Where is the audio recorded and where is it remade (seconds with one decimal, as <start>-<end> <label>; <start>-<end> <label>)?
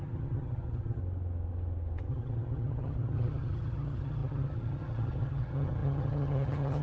0.0-1.0 remade; 1.0-2.1 recorded; 2.1-6.8 remade